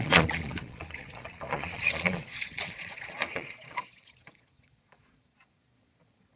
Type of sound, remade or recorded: remade